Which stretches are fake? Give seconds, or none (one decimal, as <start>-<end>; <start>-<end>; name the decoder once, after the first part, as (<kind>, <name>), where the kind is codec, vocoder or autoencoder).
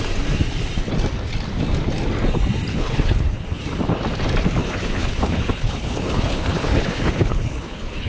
2.7-3.6 (codec, HILCodec); 4.6-8.1